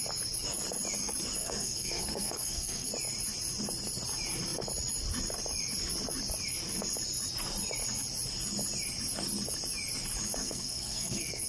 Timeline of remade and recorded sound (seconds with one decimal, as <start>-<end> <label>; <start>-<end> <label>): 0.0-1.4 recorded; 1.4-2.9 remade; 2.9-10.4 recorded; 10.4-11.5 remade